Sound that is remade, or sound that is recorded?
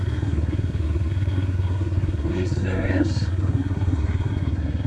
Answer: remade